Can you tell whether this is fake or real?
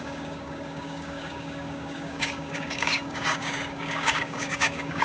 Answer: fake